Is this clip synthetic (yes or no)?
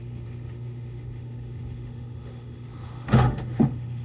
yes